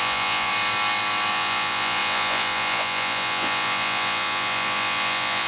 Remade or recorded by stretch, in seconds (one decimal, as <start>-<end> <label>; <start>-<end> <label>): 0.0-0.5 remade; 0.5-1.3 recorded; 1.3-5.5 remade

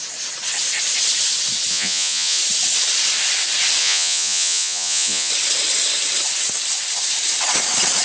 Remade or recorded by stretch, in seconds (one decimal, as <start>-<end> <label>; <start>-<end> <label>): 0.0-1.7 recorded; 1.7-2.4 remade; 2.4-3.8 recorded; 3.8-5.3 remade; 5.3-8.0 recorded

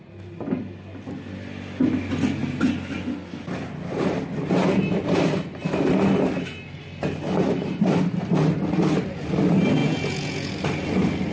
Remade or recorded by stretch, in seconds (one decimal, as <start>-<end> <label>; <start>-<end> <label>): 0.0-9.8 recorded; 9.8-10.5 remade; 10.5-11.3 recorded

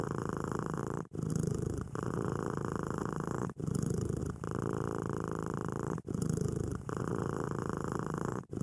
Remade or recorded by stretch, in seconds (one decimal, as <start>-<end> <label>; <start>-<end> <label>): 0.0-0.8 remade; 0.8-1.3 recorded; 1.3-4.2 remade; 4.2-6.1 recorded; 6.1-8.6 remade

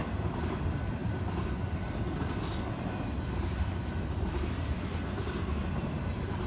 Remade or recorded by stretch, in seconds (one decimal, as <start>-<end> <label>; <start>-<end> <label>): 0.0-6.5 recorded

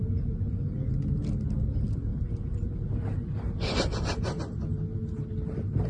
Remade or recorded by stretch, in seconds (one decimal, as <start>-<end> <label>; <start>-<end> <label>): 0.0-5.9 recorded

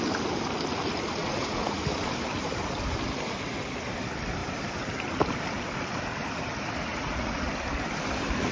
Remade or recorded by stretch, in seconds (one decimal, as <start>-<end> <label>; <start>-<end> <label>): 0.0-1.2 recorded; 1.2-1.8 remade; 1.8-6.9 recorded; 6.9-7.5 remade; 7.5-8.5 recorded

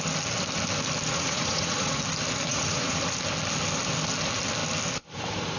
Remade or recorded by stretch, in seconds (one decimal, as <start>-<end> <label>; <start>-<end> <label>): 0.0-1.1 recorded; 1.1-2.0 remade; 2.0-2.5 recorded; 2.5-3.0 remade; 3.0-5.6 recorded